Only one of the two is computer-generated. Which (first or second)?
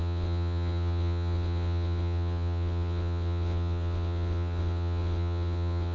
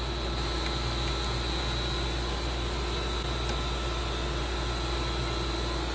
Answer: first